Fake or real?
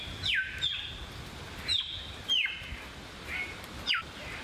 real